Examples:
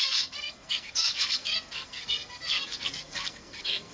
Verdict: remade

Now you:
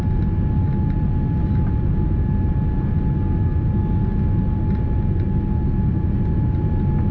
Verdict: recorded